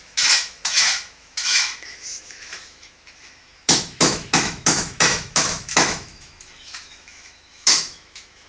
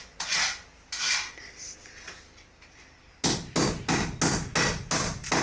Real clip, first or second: second